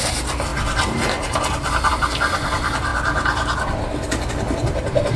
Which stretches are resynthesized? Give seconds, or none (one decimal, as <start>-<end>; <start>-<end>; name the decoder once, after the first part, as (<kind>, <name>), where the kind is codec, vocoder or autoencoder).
none